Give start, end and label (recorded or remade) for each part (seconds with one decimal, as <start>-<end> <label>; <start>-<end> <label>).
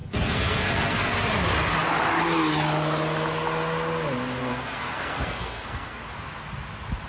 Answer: 0.0-1.1 remade; 1.1-4.4 recorded; 4.4-6.0 remade; 6.0-7.1 recorded